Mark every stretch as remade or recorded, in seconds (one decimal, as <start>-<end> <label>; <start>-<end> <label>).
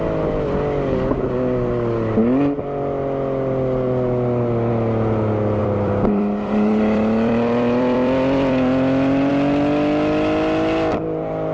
0.0-5.6 recorded; 5.6-9.3 remade; 9.3-11.5 recorded